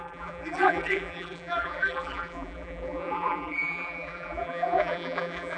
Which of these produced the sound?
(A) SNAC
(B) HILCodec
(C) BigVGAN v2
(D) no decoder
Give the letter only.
C